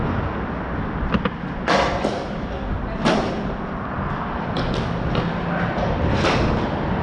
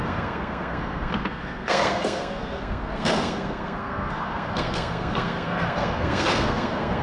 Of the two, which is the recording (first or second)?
first